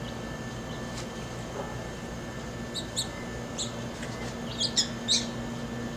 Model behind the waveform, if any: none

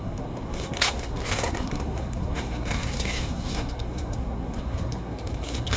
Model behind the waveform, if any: codec, SNAC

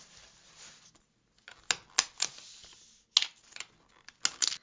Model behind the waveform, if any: none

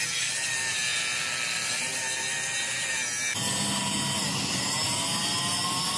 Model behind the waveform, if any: none